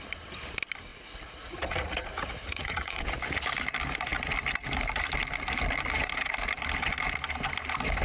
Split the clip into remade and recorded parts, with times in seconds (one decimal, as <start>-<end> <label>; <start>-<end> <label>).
0.0-0.9 recorded; 0.9-3.0 remade; 3.0-8.0 recorded